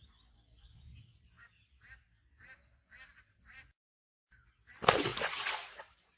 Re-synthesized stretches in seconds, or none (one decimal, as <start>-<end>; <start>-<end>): none